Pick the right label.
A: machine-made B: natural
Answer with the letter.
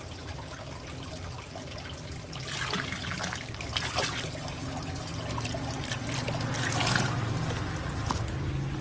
B